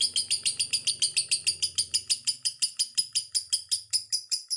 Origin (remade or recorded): recorded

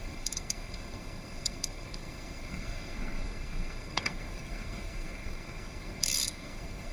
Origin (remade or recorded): remade